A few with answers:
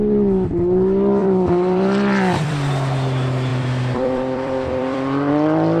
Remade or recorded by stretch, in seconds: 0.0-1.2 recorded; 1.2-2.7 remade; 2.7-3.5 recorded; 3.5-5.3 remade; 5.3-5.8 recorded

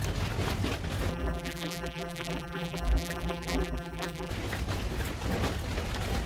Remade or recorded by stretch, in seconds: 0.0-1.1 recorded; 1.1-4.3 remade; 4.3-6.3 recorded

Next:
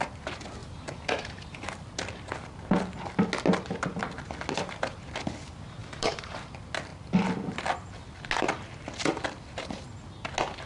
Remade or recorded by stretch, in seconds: 0.0-0.6 recorded; 0.6-1.7 remade; 1.7-5.8 recorded; 5.8-6.5 remade; 6.5-10.7 recorded